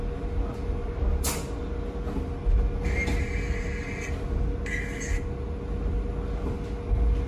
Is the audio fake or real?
real